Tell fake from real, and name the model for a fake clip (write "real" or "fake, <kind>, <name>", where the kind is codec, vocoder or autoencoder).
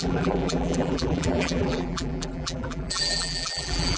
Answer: fake, vocoder, BigVGAN v2